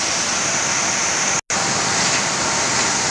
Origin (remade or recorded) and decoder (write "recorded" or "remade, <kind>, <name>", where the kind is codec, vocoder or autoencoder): recorded